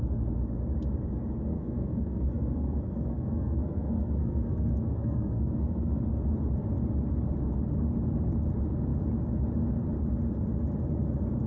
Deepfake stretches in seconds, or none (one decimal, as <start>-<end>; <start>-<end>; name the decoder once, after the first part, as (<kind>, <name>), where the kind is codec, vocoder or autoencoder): 1.5-6.0 (codec, SNAC)